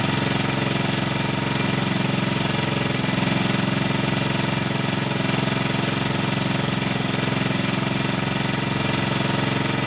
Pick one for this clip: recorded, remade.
recorded